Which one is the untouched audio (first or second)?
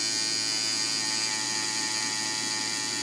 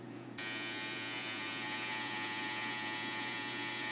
first